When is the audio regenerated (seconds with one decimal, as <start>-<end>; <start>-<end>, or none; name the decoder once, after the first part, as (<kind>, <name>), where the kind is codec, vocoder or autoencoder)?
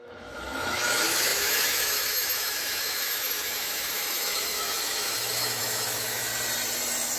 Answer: 0.0-6.3 (autoencoder, DAC-VAE)